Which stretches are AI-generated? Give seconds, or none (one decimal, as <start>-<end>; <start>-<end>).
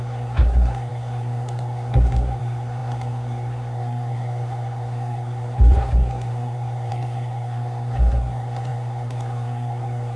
0.0-10.2